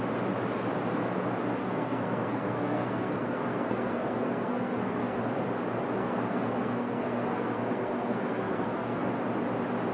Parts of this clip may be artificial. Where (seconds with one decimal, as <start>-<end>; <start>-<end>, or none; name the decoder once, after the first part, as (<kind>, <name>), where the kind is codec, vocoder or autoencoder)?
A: 1.6-5.2 (codec, SNAC); 6.0-9.1